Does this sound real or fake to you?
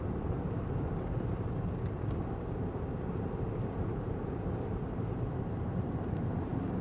fake